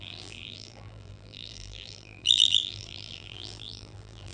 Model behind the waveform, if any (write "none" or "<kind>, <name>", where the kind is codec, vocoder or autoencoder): vocoder, BigVGAN v2